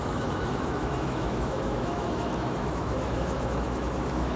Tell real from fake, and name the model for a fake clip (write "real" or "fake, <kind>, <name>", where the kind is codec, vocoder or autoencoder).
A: fake, autoencoder, DAC-VAE